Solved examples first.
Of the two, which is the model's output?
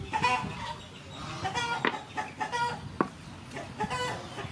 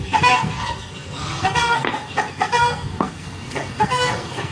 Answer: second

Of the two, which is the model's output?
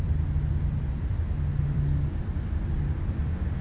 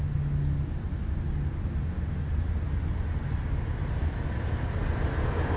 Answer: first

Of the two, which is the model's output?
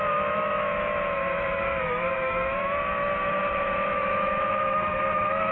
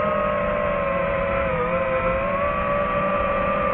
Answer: first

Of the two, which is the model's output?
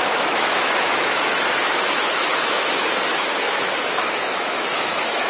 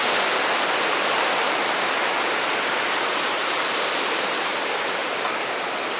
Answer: first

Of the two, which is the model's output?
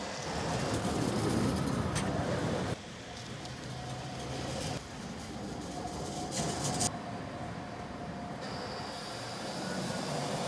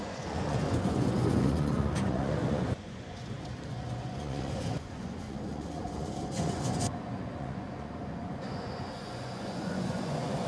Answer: second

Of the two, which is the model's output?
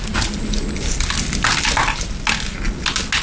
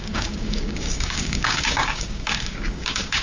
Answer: second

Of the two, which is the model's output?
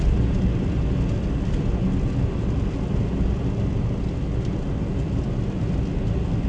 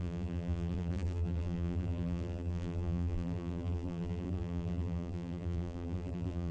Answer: second